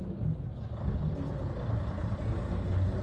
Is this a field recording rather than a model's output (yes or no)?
yes